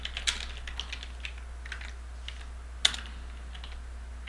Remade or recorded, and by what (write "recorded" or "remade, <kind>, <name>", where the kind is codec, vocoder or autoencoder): recorded